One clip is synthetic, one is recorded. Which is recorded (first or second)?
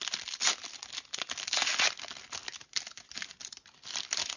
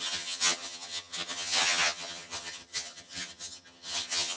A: first